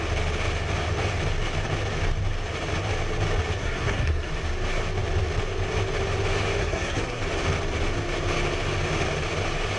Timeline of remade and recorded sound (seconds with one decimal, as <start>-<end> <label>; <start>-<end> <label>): 0.0-3.6 recorded; 3.6-4.3 remade; 4.3-6.6 recorded; 6.6-7.2 remade; 7.2-9.8 recorded